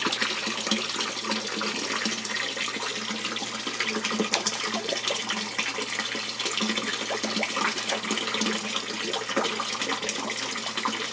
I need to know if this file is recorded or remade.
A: recorded